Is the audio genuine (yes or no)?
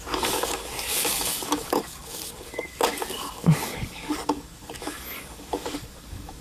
no